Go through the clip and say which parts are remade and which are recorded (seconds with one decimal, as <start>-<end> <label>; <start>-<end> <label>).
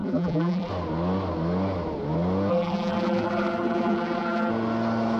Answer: 0.0-0.7 remade; 0.7-2.5 recorded; 2.5-4.5 remade; 4.5-5.2 recorded